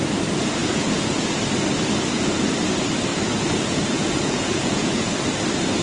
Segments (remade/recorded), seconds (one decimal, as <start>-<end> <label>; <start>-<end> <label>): 0.0-0.6 recorded; 0.6-1.3 remade; 1.3-3.1 recorded; 3.1-5.1 remade; 5.1-5.8 recorded